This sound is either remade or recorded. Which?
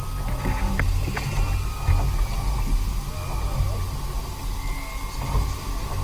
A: recorded